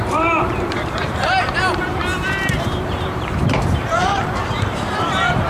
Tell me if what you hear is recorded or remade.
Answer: remade